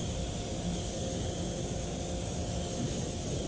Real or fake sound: real